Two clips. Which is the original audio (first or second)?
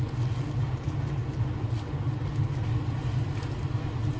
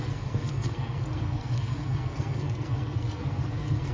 first